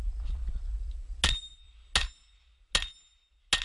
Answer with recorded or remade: recorded